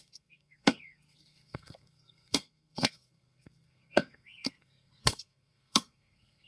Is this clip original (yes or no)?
no